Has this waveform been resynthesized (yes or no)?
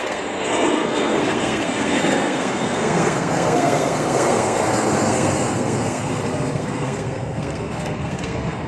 yes